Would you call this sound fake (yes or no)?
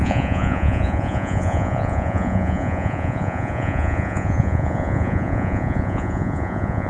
yes